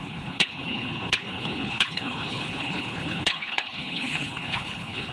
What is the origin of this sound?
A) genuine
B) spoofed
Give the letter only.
B